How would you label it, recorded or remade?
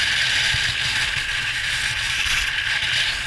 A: recorded